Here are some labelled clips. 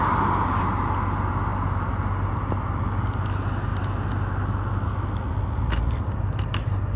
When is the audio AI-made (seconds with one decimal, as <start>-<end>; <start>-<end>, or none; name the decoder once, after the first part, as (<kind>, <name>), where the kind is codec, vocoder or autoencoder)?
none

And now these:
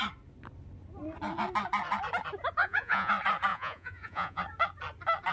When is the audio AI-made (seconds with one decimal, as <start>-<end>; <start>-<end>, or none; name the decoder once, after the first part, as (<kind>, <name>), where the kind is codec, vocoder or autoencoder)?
2.6-3.1 (vocoder, Vocos); 3.5-4.4

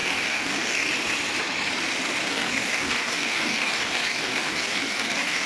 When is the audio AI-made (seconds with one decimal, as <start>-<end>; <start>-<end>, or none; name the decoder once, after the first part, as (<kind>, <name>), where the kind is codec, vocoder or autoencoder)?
0.0-0.9 (codec, DAC); 2.2-5.5

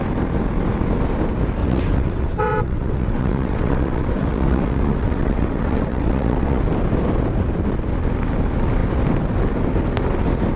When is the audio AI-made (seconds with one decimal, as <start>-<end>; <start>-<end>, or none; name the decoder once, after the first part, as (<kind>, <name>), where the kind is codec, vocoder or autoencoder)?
1.6-6.6 (vocoder, WaveNeXt)

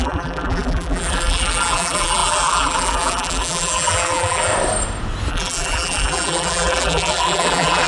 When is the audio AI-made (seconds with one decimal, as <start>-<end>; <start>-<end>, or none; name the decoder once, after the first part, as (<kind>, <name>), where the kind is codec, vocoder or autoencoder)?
0.0-4.5 (vocoder, BigVGAN v2); 5.3-7.9

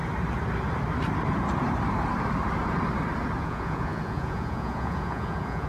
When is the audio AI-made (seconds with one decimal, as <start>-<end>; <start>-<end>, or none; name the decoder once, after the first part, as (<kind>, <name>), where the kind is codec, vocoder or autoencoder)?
3.4-5.7 (vocoder, Vocos)

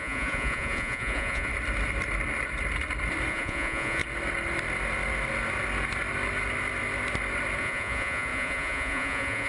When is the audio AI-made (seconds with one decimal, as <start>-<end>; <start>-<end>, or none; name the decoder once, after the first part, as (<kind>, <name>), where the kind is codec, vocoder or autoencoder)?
0.0-1.5 (vocoder, Vocos); 3.3-4.0; 7.6-9.5

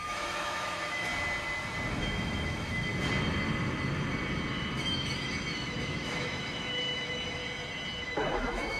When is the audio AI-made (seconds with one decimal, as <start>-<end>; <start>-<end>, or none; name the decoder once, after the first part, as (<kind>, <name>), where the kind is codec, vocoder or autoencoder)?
0.0-1.1 (autoencoder, DAC-VAE); 2.0-2.9; 4.8-7.4; 8.0-8.8